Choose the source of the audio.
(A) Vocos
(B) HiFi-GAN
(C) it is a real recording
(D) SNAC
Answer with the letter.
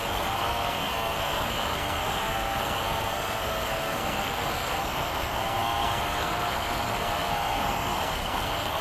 D